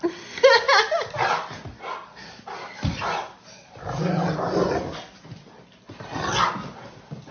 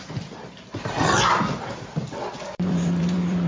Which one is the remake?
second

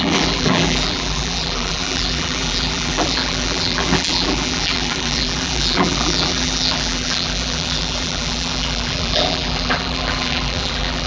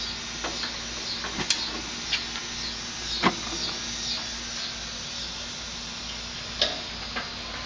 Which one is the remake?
first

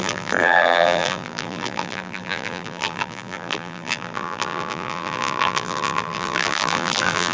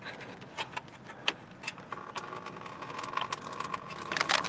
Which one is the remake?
first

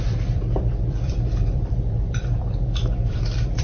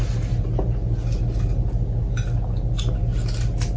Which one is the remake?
first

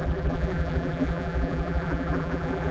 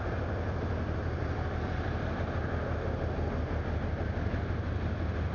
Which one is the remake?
first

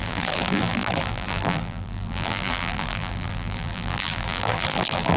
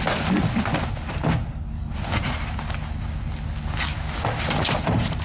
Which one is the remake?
first